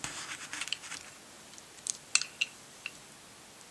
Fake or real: real